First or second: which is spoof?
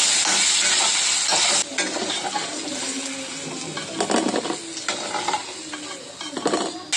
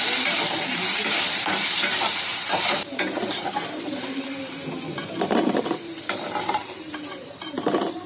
second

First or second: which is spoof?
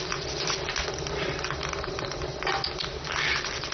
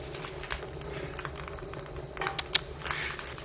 first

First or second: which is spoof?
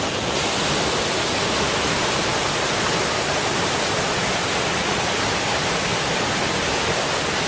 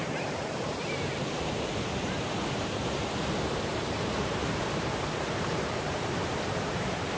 second